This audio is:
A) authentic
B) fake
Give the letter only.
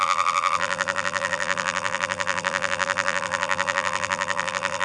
B